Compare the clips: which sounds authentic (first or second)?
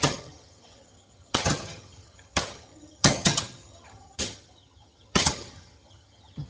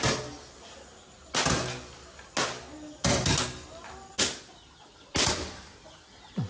second